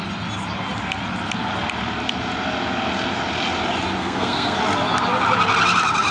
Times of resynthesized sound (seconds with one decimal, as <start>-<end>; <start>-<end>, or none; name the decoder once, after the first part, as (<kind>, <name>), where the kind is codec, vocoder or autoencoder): 4.0-4.6 (codec, SNAC)